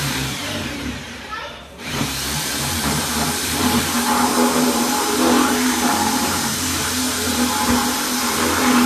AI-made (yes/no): yes